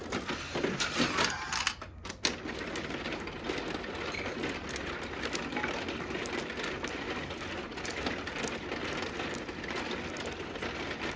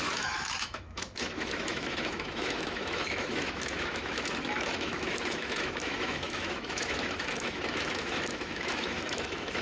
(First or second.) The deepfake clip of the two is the second